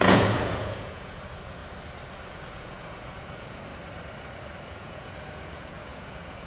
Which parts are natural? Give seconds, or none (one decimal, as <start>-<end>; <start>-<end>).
1.6-2.3; 3.7-4.6